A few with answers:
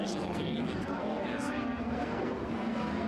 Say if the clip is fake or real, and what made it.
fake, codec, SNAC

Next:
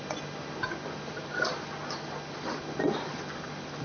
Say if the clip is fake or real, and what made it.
real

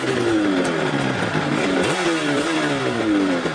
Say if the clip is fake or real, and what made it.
real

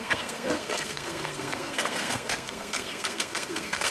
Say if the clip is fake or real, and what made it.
fake, codec, SNAC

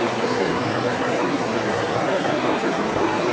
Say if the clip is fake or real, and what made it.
fake, codec, SNAC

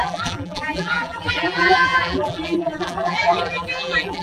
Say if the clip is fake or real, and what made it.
fake, vocoder, BigVGAN v2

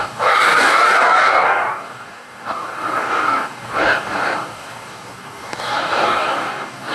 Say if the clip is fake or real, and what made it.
fake, codec, DAC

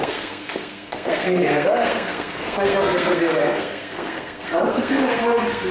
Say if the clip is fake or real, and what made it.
fake, codec, SNAC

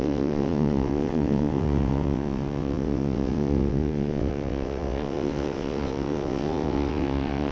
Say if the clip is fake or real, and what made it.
fake, vocoder, WaveNeXt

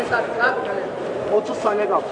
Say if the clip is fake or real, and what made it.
fake, vocoder, BigVGAN v2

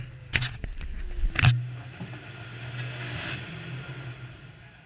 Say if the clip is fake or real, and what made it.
real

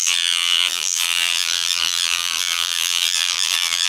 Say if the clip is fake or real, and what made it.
fake, vocoder, BigVGAN v2